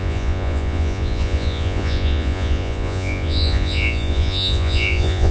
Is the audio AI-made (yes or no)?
yes